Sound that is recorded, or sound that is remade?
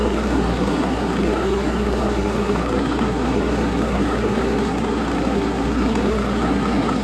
remade